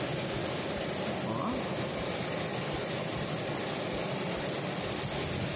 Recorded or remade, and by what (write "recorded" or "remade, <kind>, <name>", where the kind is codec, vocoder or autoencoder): recorded